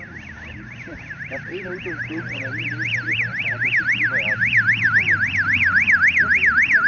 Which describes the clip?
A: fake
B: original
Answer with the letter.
A